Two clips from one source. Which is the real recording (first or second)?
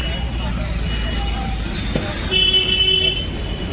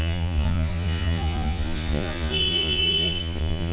first